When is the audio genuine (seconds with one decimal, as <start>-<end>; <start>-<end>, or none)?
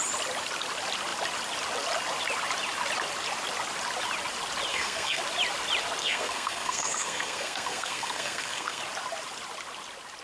0.0-4.7; 5.2-6.0; 8.8-10.2